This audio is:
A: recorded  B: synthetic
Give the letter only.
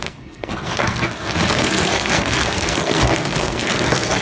B